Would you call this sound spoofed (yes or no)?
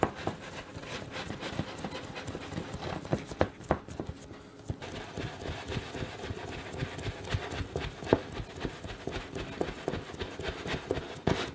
no